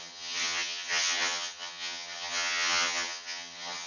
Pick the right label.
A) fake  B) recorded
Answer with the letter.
A